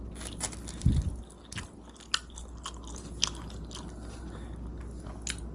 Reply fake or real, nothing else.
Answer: real